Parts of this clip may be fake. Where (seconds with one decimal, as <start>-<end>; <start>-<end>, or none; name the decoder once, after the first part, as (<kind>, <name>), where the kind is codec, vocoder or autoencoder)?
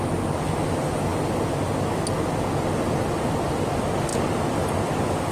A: none